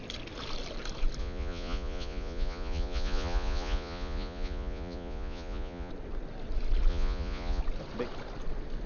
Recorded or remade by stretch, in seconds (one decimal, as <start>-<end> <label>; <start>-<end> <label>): 0.0-1.2 recorded; 1.2-5.9 remade; 5.9-6.9 recorded; 6.9-7.6 remade; 7.6-8.9 recorded